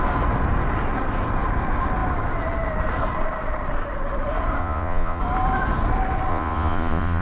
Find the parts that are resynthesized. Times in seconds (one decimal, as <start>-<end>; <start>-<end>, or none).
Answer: 4.6-5.2; 6.3-7.2